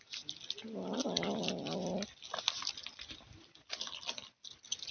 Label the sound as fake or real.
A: real